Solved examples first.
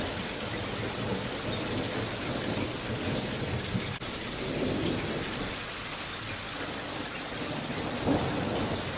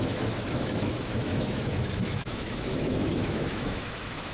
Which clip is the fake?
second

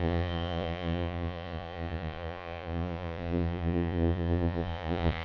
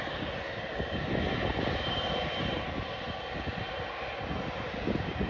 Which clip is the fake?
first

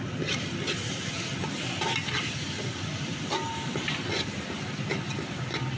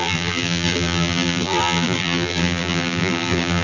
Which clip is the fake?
second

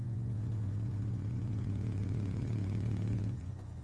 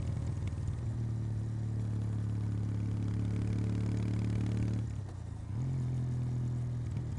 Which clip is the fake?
first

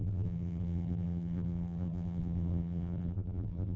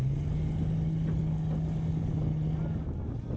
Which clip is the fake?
first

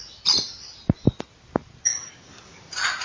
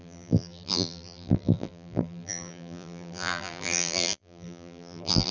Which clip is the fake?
second